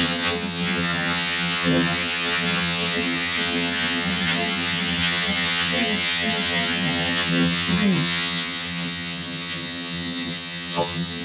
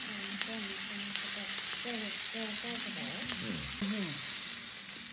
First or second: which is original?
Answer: second